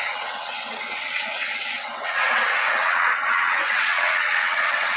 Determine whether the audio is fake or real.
fake